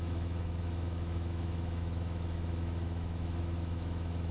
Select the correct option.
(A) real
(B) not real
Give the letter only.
B